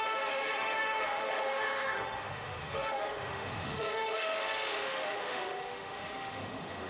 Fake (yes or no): yes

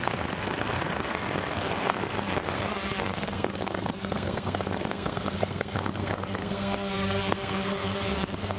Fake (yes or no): yes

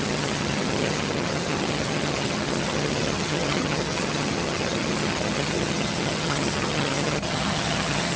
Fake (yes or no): yes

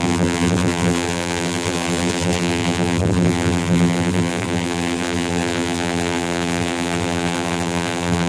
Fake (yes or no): yes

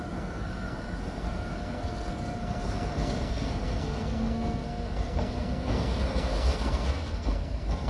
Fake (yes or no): yes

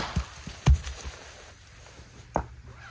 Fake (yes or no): no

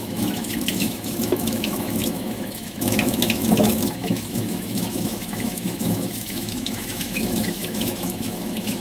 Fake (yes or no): yes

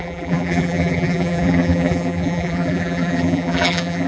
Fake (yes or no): yes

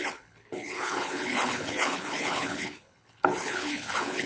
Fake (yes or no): yes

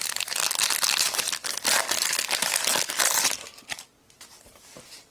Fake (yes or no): no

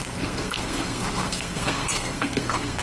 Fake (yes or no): yes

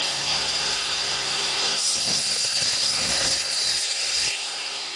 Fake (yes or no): yes